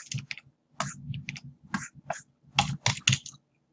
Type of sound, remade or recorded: recorded